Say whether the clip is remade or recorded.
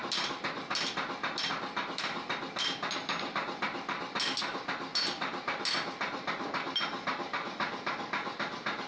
recorded